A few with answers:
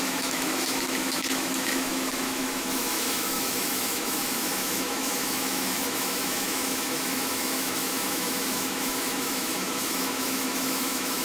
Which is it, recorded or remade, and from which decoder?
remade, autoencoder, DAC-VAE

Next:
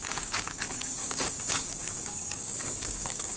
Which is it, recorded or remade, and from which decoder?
remade, codec, DAC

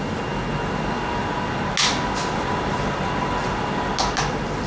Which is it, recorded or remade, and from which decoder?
recorded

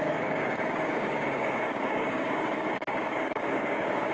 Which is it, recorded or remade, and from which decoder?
remade, codec, DAC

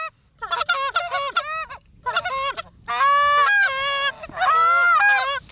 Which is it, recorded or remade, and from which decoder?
recorded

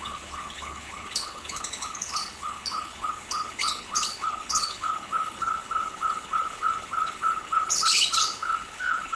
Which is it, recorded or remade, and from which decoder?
remade, codec, HILCodec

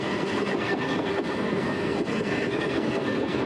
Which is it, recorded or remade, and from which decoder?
remade, codec, SNAC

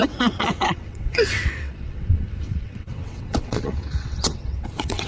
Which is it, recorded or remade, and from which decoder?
remade, vocoder, WaveNeXt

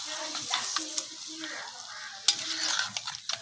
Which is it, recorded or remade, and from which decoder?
recorded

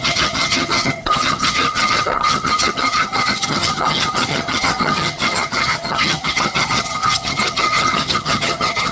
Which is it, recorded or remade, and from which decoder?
remade, vocoder, HiFi-GAN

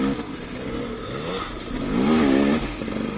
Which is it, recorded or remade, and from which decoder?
recorded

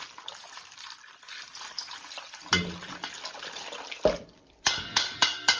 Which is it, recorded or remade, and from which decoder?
recorded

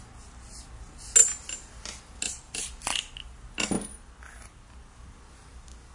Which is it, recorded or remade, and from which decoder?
recorded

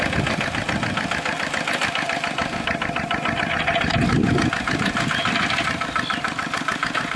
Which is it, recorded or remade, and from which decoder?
recorded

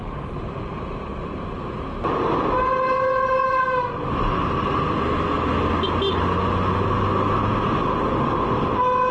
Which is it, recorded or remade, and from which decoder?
recorded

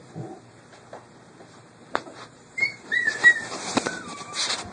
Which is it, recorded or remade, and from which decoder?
remade, vocoder, BigVGAN v2